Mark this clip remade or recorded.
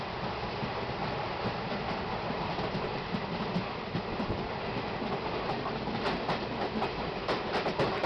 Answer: recorded